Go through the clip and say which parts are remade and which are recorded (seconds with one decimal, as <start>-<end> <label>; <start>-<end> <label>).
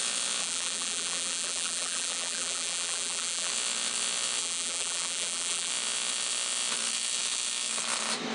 0.0-0.4 recorded; 0.4-3.5 remade; 3.5-4.4 recorded; 4.4-5.7 remade; 5.7-8.3 recorded